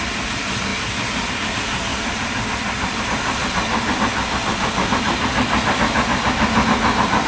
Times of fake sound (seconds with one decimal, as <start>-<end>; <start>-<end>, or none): 0.7-1.3; 1.9-3.0